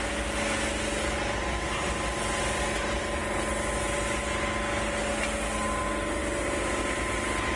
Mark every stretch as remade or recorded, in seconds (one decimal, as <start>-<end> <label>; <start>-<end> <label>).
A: 0.0-7.6 recorded